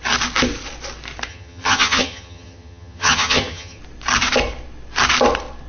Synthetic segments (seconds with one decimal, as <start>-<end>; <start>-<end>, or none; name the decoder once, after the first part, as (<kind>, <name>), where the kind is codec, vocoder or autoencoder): 1.3-3.8 (vocoder, HiFi-GAN)